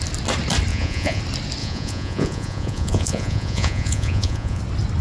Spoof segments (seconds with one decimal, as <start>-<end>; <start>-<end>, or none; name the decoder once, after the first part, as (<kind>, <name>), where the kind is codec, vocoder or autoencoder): 0.7-1.2 (vocoder, Vocos); 1.6-4.6